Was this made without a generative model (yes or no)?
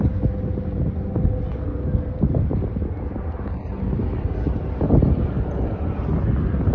yes